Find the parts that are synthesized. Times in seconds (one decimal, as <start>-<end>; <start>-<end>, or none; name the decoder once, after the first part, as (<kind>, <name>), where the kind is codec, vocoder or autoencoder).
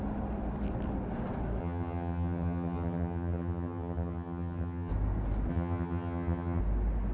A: 1.6-4.9 (vocoder, HiFi-GAN); 5.5-6.6